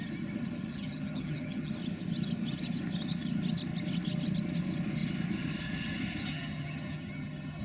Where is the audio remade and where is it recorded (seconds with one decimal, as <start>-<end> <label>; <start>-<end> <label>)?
0.0-0.7 recorded; 0.7-1.7 remade; 1.7-6.3 recorded; 6.3-7.6 remade